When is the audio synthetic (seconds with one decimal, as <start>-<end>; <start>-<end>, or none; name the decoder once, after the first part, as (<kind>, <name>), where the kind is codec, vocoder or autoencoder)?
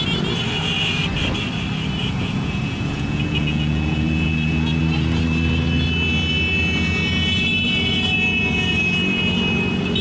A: 2.0-4.8 (vocoder, Vocos)